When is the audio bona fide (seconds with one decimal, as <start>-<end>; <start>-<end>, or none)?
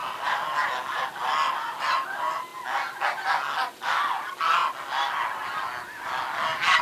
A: 0.0-6.8